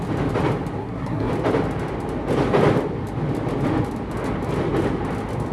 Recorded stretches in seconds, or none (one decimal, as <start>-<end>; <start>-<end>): 0.0-0.8; 1.3-5.5